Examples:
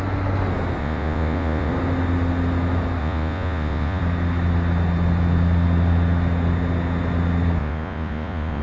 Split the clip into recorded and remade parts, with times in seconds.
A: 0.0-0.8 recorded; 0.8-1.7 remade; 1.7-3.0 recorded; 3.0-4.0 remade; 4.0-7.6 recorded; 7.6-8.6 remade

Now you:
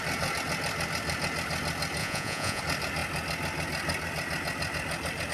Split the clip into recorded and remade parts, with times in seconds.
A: 0.0-2.0 recorded; 2.0-2.6 remade; 2.6-5.3 recorded